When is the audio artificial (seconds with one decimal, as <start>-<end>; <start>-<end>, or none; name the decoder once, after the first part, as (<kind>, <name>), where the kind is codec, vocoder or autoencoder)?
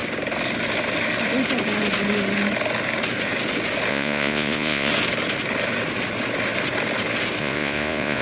3.9-4.9 (vocoder, Vocos); 7.4-8.2